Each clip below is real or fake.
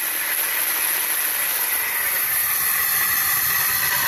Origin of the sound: real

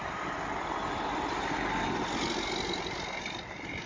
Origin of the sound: real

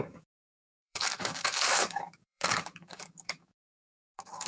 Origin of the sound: fake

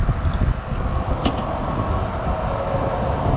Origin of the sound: real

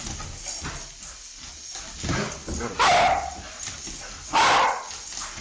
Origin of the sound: real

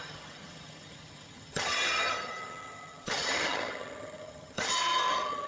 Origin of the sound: fake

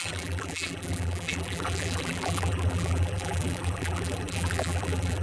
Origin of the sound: fake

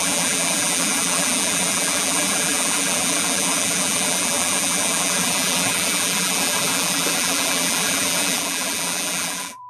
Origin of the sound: fake